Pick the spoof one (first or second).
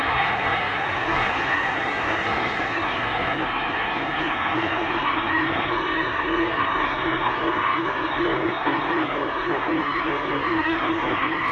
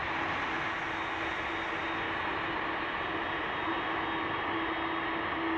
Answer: first